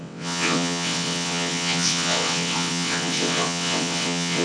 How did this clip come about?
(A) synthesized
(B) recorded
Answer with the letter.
A